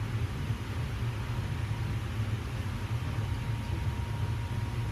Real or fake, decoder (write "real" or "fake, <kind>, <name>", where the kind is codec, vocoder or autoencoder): real